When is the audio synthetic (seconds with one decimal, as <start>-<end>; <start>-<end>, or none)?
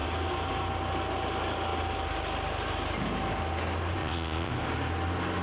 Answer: 4.0-4.5